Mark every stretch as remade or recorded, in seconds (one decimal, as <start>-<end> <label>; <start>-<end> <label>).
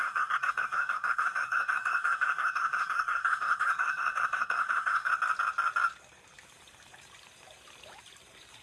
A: 0.0-5.1 remade; 5.1-8.6 recorded